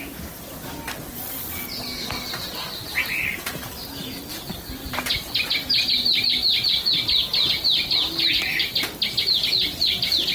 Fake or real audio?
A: real